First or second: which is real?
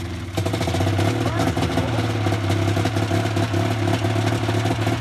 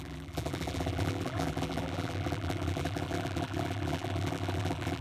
first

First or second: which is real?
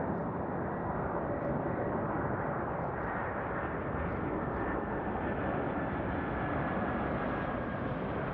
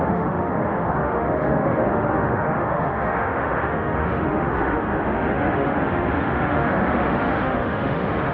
first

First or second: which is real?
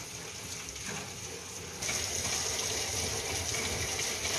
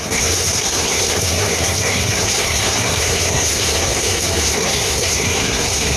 first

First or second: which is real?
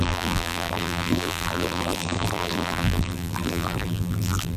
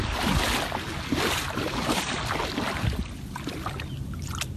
second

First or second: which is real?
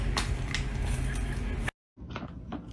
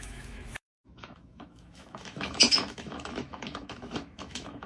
first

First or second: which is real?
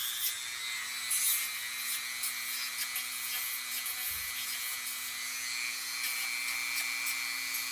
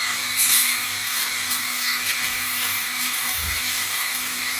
first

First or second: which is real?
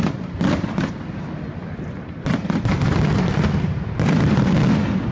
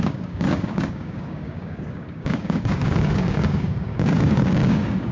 first